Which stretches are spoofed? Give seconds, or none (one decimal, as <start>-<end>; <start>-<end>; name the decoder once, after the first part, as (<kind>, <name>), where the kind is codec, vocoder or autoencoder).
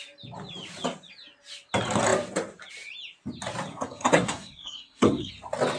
3.7-5.3 (codec, SNAC)